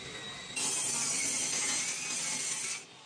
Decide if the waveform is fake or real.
real